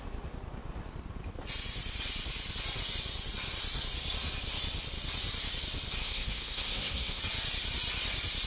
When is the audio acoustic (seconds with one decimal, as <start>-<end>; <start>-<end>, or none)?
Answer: 0.0-6.0; 7.2-8.5